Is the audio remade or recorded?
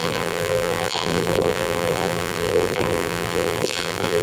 remade